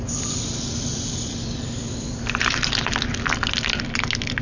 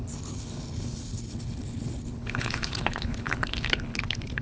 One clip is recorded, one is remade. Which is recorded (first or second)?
first